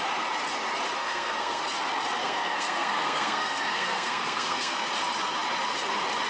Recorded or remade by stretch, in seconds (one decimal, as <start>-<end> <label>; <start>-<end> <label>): 0.0-1.0 recorded; 1.0-1.6 remade; 1.6-2.2 recorded; 2.2-4.9 remade; 4.9-6.3 recorded

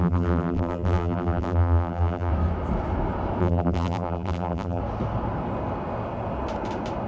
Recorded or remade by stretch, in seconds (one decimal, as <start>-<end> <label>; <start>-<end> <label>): 0.0-2.3 remade; 2.3-3.4 recorded; 3.4-4.8 remade; 4.8-7.1 recorded

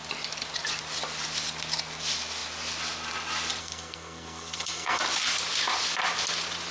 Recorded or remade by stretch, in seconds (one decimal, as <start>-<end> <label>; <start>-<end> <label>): 0.0-3.6 recorded; 3.6-5.0 remade; 5.0-6.7 recorded

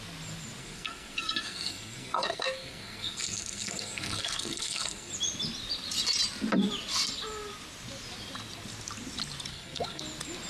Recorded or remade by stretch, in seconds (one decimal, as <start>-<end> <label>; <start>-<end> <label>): 0.0-0.6 recorded; 0.6-5.1 remade; 5.1-9.5 recorded; 9.5-10.0 remade; 10.0-10.5 recorded

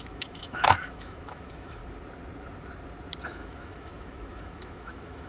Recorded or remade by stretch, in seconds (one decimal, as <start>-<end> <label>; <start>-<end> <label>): 0.0-1.8 remade; 1.8-3.2 recorded; 3.2-5.3 remade

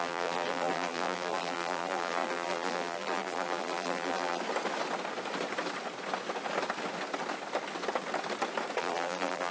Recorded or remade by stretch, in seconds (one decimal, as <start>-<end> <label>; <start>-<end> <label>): 0.0-4.4 remade; 4.4-8.8 recorded; 8.8-9.5 remade

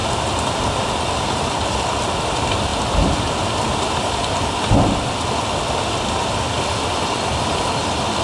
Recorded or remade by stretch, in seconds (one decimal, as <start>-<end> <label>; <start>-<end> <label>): 0.0-8.2 recorded